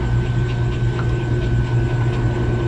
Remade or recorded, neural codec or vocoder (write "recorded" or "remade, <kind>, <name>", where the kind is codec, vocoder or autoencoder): recorded